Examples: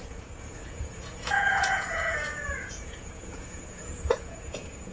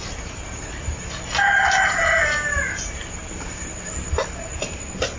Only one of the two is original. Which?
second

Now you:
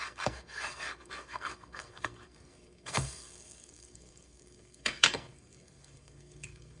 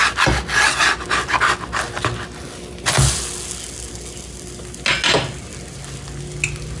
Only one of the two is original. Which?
second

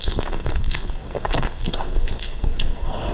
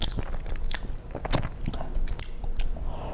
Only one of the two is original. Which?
second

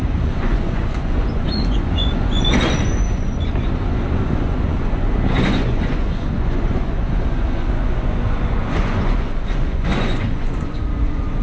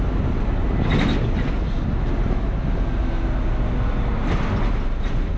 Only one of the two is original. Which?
second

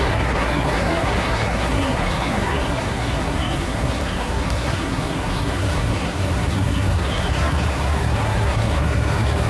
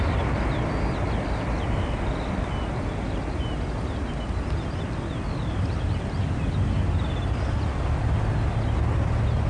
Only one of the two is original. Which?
second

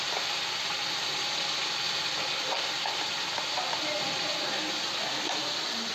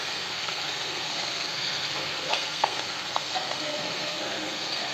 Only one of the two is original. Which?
first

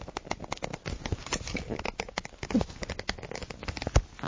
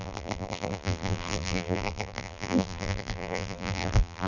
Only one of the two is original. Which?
first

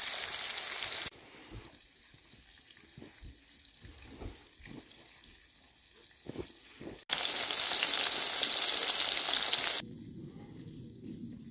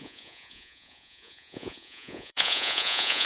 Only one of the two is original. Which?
first